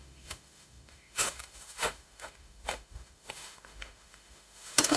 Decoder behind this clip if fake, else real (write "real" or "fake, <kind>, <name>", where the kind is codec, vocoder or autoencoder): fake, autoencoder, DAC-VAE